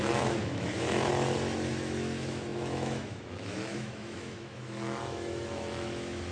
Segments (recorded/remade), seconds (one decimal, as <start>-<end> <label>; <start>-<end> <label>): 0.0-1.1 remade; 1.1-1.7 recorded; 1.7-6.3 remade